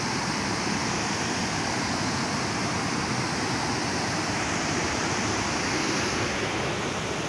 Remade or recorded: remade